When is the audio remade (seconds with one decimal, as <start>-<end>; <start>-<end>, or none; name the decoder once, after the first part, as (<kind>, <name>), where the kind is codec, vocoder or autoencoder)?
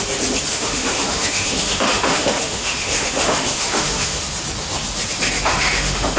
0.5-4.2 (autoencoder, DAC-VAE); 5.5-6.2